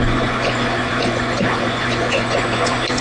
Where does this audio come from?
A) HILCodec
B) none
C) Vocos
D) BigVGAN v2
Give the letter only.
C